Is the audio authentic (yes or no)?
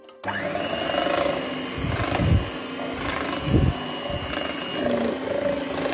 yes